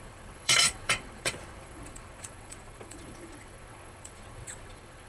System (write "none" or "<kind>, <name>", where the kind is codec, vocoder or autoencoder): vocoder, WaveNeXt